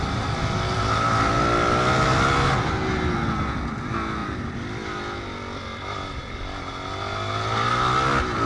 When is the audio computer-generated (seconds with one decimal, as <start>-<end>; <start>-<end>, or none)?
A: 4.2-5.0